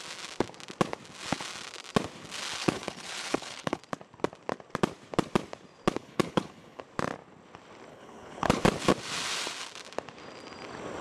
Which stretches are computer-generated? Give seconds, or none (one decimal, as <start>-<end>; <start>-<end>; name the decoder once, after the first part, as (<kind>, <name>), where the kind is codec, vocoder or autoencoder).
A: 2.6-3.8 (codec, HILCodec); 6.0-6.8; 7.9-8.6